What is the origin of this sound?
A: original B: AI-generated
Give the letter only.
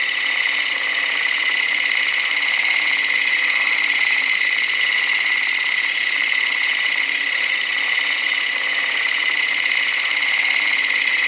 B